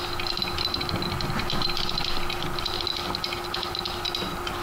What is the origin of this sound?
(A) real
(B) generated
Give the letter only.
A